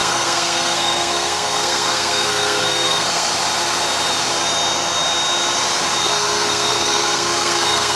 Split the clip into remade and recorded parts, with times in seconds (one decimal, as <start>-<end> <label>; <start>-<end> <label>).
0.0-3.3 remade; 3.3-6.0 recorded; 6.0-8.0 remade